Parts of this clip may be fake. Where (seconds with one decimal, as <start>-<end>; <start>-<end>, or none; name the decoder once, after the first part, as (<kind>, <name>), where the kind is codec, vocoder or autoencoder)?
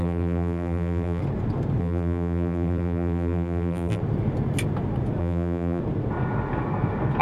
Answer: 0.0-1.2 (vocoder, BigVGAN v2); 1.8-4.0; 5.2-5.8